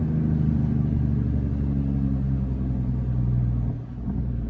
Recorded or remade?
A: recorded